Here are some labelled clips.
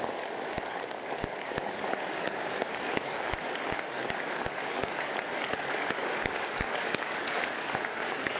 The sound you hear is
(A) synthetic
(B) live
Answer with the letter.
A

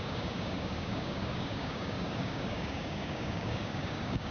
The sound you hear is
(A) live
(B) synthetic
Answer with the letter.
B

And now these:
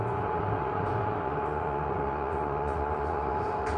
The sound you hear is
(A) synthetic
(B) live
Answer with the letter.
A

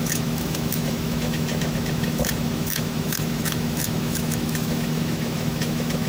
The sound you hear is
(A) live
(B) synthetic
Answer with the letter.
B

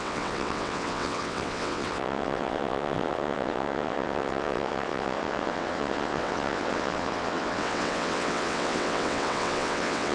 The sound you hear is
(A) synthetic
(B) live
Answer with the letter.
A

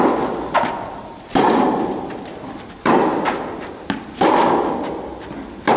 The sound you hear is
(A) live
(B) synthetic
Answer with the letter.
A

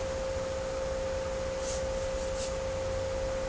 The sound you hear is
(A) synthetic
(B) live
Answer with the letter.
B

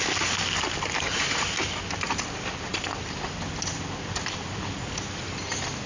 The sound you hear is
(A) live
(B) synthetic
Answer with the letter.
A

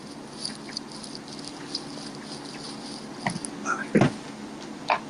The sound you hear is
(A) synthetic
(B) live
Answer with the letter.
A